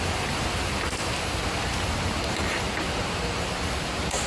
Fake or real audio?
real